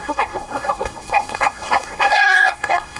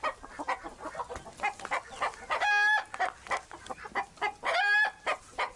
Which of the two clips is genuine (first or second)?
second